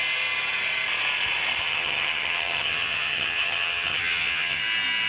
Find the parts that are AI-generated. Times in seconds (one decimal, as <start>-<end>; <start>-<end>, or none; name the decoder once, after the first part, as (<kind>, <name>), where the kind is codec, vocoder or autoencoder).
1.6-4.6 (vocoder, HiFi-GAN)